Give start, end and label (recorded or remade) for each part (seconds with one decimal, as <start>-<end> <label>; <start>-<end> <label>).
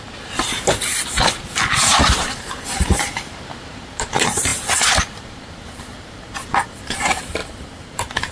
0.0-0.9 remade; 0.9-2.1 recorded; 2.1-4.5 remade; 4.5-5.0 recorded; 5.0-8.3 remade